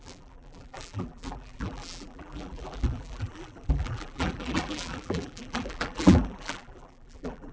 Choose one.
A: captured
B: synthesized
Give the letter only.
B